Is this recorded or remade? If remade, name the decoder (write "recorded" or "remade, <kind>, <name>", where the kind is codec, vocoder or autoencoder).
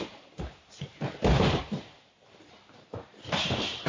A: remade, vocoder, BigVGAN v2